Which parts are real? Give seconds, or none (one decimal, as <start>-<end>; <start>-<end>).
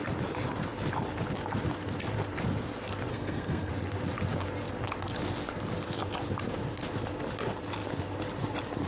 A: 0.0-3.1; 3.7-8.9